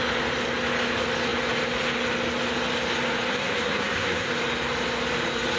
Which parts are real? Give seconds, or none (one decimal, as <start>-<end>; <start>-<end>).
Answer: 0.0-3.3; 4.3-5.6